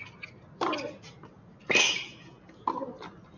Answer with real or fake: real